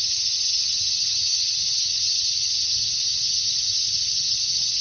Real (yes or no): no